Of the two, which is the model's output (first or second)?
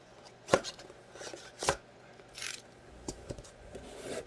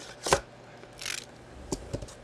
first